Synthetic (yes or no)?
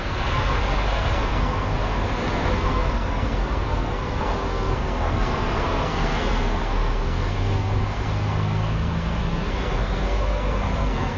yes